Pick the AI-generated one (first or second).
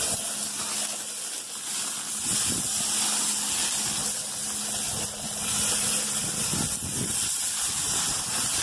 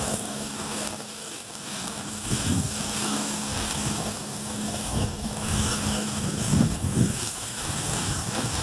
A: second